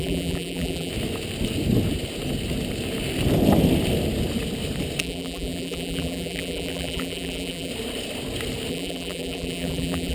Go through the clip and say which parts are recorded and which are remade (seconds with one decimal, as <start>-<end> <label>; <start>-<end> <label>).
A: 0.0-0.9 remade; 0.9-5.0 recorded; 5.0-7.7 remade; 7.7-8.7 recorded; 8.7-10.1 remade